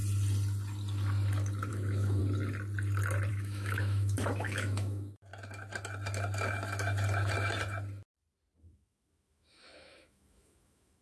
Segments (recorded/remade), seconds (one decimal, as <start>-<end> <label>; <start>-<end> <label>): 0.0-1.7 recorded; 1.7-2.2 remade; 2.2-3.3 recorded; 3.3-5.3 remade; 5.3-8.6 recorded; 8.6-11.0 remade

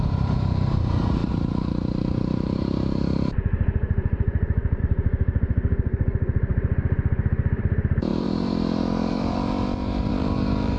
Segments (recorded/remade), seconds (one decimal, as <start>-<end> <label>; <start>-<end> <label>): 0.0-10.8 remade

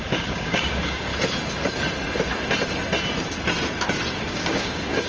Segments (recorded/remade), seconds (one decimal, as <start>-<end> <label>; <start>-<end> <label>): 0.0-1.1 remade; 1.1-4.2 recorded; 4.2-5.1 remade

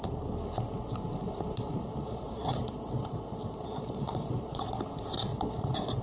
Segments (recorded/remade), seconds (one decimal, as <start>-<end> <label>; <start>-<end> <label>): 0.0-2.0 recorded; 2.0-4.6 remade; 4.6-5.3 recorded; 5.3-6.0 remade